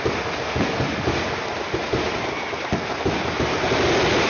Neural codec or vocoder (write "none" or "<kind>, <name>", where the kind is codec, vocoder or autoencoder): none